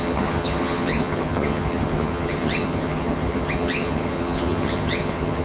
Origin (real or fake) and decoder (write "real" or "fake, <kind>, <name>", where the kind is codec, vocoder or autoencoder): fake, vocoder, HiFi-GAN